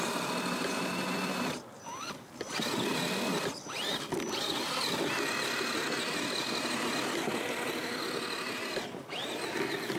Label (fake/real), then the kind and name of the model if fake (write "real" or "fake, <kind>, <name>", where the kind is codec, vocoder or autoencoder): real